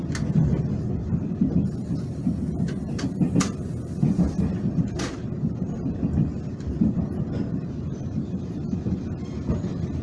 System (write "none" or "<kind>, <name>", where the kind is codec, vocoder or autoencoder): none